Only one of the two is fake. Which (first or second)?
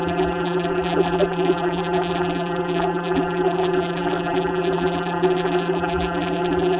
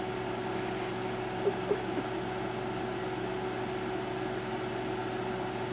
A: first